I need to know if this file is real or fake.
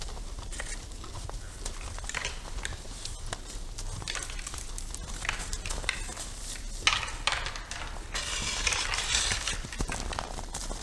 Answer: real